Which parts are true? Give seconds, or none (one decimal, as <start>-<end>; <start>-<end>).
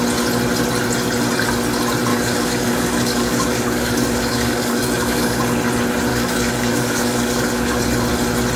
0.0-2.1; 5.4-6.1; 7.8-8.6